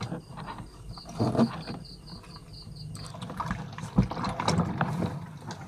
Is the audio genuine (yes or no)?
yes